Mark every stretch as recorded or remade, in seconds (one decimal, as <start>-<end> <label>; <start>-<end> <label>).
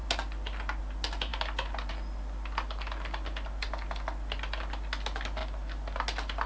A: 0.0-6.5 recorded